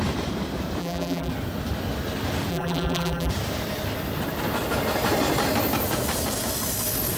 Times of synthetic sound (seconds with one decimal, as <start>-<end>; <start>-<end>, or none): 0.8-1.3; 2.5-3.3